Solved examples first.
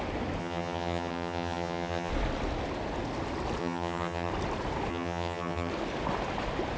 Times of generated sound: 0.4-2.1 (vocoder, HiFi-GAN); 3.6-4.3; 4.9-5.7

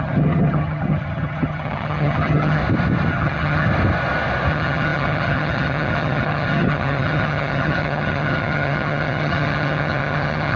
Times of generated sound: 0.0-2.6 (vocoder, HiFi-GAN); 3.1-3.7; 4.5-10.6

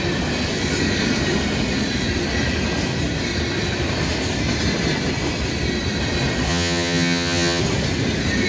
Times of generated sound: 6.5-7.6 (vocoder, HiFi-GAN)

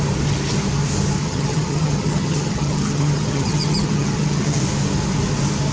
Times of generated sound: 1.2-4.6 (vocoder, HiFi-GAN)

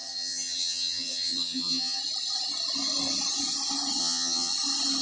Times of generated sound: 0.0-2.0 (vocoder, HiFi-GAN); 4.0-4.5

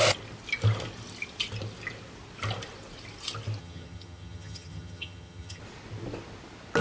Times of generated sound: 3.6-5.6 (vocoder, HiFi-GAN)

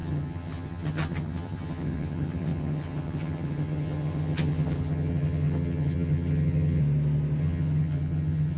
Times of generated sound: 0.0-6.8 (vocoder, HiFi-GAN); 7.4-8.6